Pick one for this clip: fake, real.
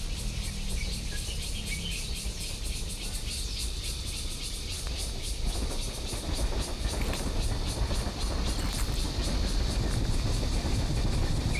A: real